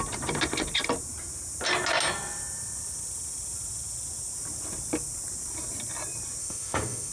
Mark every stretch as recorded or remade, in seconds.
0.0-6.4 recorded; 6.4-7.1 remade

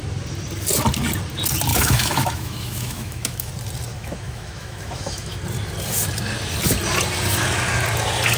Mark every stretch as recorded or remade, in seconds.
0.0-1.7 recorded; 1.7-3.5 remade; 3.5-3.9 recorded; 3.9-5.4 remade; 5.4-8.4 recorded

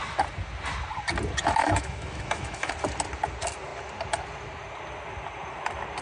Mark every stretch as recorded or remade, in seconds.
0.0-1.6 recorded; 1.6-2.7 remade; 2.7-6.0 recorded

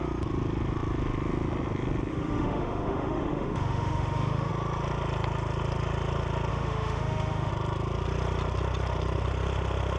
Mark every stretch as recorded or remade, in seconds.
0.0-2.1 recorded; 2.1-4.5 remade; 4.5-6.5 recorded; 6.5-7.5 remade; 7.5-10.0 recorded